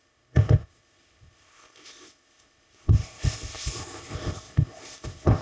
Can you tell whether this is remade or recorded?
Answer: remade